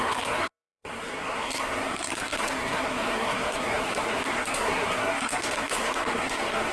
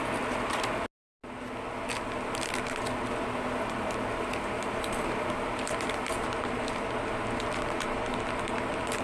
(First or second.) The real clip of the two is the second